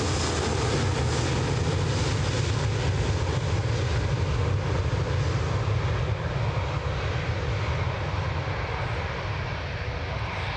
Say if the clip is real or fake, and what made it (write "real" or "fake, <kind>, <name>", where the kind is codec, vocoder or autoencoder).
real